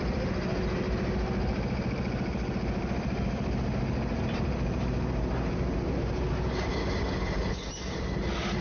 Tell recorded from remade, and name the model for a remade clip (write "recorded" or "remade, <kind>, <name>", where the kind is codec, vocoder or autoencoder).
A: recorded